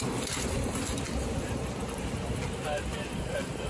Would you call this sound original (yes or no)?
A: yes